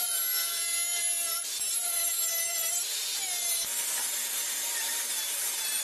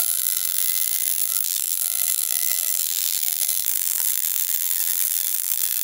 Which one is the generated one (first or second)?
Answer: second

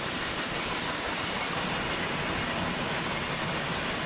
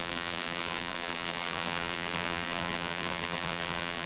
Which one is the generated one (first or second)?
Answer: second